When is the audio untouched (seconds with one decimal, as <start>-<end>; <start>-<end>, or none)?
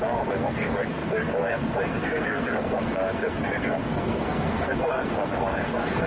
none